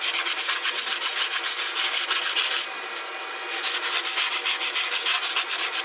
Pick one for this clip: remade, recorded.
recorded